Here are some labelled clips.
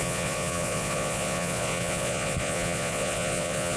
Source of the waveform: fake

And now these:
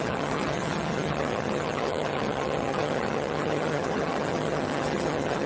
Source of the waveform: fake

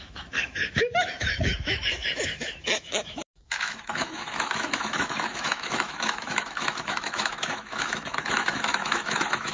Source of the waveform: fake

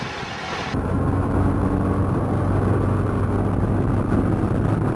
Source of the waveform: real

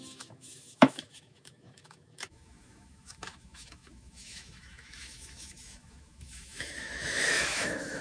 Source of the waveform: fake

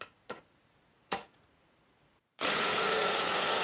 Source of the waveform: fake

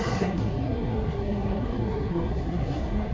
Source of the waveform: fake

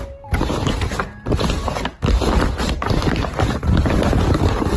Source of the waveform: real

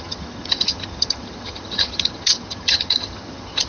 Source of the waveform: fake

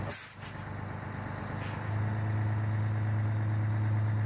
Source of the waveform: real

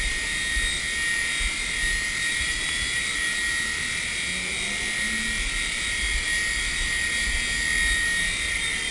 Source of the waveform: real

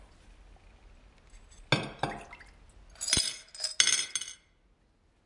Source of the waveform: real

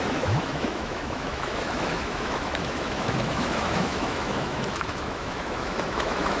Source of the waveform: fake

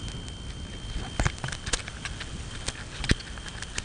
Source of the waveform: real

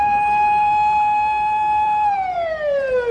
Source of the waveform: fake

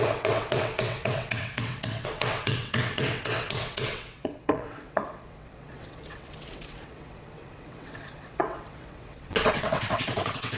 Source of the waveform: fake